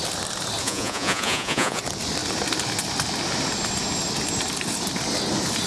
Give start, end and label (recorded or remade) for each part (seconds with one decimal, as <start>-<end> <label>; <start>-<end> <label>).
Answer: 0.0-0.6 recorded; 0.6-1.8 remade; 1.8-5.7 recorded